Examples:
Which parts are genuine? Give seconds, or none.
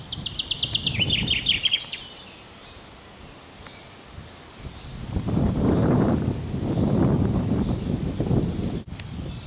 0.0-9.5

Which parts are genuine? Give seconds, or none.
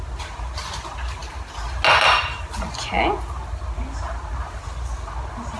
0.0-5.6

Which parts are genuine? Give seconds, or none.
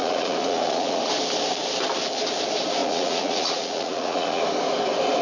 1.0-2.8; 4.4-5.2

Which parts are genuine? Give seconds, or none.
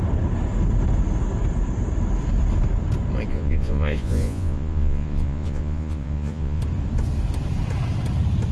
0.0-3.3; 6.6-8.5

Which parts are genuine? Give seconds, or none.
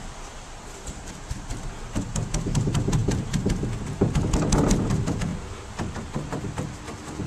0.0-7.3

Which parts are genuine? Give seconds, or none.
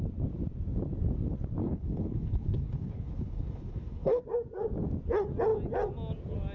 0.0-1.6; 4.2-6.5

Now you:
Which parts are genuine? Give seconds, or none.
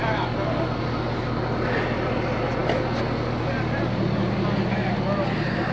0.0-5.7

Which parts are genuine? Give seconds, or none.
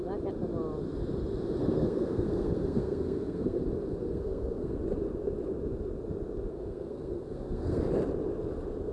0.0-1.6; 3.6-4.0; 4.8-6.5; 7.8-8.9